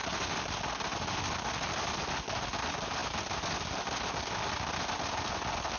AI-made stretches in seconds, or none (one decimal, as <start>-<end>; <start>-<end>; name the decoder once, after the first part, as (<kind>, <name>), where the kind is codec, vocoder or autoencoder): none